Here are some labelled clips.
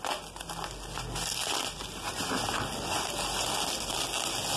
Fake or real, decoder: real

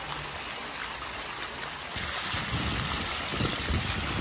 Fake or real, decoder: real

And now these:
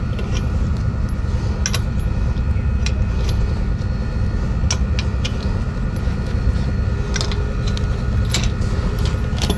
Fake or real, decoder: real